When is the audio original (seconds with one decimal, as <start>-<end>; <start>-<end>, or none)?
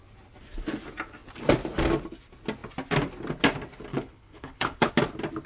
0.0-3.9; 4.9-5.5